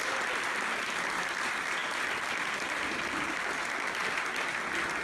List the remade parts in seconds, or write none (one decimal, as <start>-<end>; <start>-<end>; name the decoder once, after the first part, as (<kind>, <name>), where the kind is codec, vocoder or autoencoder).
0.0-4.0 (vocoder, BigVGAN v2)